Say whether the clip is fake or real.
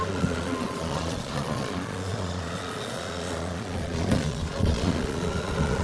fake